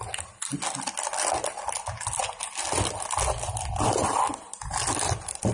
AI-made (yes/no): no